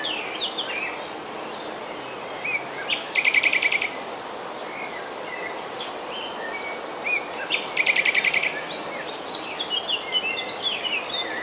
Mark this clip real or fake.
real